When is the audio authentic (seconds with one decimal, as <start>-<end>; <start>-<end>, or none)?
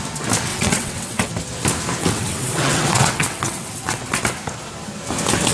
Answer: 0.0-0.5; 1.3-2.0; 4.0-5.5